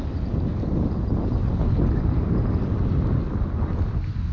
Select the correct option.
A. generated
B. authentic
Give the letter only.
B